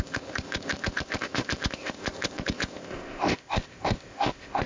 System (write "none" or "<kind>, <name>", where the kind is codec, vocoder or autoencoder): codec, ZipCodec